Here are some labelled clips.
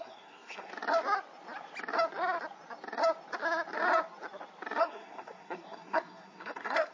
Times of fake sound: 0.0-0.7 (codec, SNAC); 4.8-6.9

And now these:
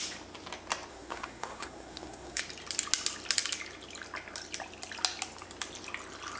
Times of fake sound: 0.9-2.4 (codec, SNAC)

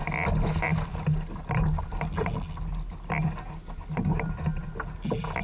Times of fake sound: none

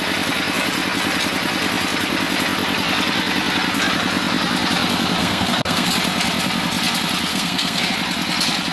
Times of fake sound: 5.2-5.9 (codec, SNAC); 7.3-7.9

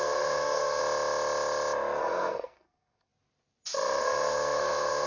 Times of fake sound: 0.0-0.8 (codec, SNAC); 2.0-3.1; 4.0-5.1

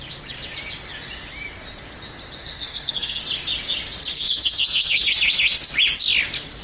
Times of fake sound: 2.4-3.2 (codec, SNAC); 4.1-5.1